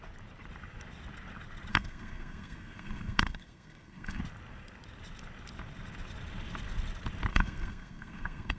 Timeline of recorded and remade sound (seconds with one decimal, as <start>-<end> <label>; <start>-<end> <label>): 0.0-1.7 recorded; 1.7-4.2 remade; 4.2-7.3 recorded; 7.3-8.6 remade